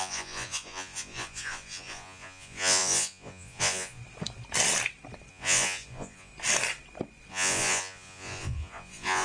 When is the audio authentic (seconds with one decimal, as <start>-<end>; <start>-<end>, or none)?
4.0-5.3; 6.3-7.3